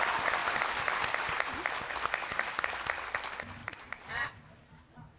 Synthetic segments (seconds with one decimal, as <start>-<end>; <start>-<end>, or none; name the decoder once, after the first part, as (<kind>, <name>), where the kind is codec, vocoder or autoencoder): 3.6-4.8 (vocoder, BigVGAN v2)